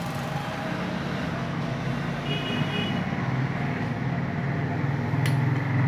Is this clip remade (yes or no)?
no